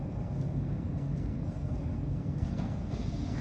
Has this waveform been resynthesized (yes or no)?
yes